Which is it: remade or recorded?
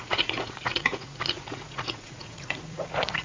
remade